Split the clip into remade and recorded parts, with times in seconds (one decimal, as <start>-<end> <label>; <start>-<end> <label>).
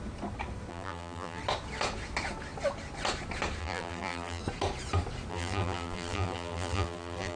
0.0-0.7 recorded; 0.7-1.4 remade; 1.4-3.6 recorded; 3.6-4.4 remade; 4.4-5.3 recorded; 5.3-7.4 remade